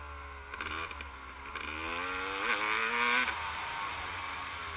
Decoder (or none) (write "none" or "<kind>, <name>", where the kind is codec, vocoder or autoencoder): none